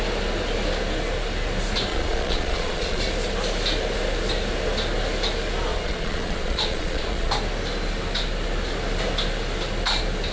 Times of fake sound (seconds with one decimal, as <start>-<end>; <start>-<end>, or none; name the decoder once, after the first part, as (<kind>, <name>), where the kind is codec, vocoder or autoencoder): 1.9-3.0 (vocoder, Vocos); 5.7-7.3